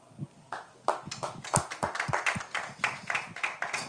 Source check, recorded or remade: recorded